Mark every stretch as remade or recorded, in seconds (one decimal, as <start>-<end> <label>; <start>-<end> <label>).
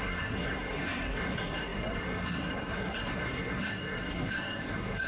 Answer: 0.0-5.1 remade